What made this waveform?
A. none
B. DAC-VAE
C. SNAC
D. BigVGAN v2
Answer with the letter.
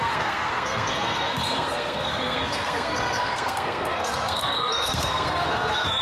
C